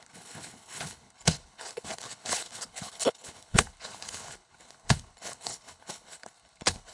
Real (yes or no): no